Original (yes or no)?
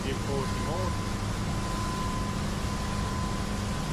yes